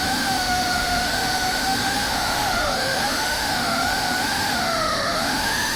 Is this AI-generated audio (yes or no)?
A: yes